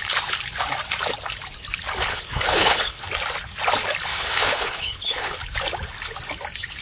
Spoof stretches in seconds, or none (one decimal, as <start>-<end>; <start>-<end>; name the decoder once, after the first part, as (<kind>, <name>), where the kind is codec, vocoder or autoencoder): 2.1-3.1 (codec, HILCodec); 4.1-5.4